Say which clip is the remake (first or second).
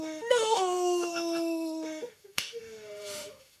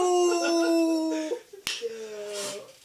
first